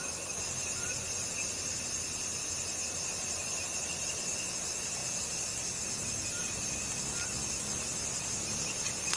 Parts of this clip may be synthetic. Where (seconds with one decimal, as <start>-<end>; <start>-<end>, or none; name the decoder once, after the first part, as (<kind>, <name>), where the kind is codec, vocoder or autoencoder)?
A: none